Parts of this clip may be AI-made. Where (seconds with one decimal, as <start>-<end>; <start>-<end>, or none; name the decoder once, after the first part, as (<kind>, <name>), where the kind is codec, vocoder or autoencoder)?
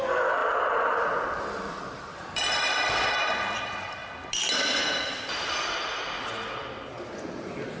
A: 0.4-2.9 (vocoder, BigVGAN v2)